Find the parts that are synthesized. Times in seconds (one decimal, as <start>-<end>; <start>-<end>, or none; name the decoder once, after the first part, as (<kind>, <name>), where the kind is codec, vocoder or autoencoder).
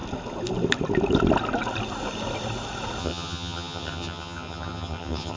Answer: 3.0-5.4 (vocoder, HiFi-GAN)